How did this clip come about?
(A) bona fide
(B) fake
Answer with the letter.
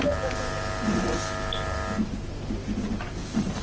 A